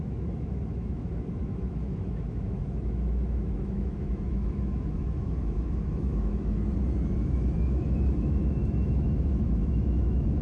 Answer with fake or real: fake